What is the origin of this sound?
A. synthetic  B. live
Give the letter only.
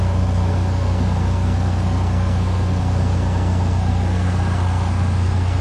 A